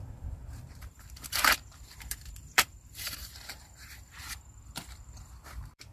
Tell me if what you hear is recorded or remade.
remade